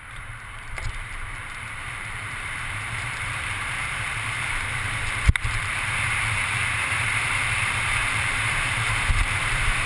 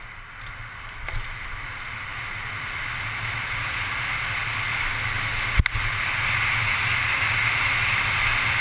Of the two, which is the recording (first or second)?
second